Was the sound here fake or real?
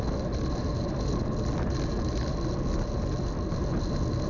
real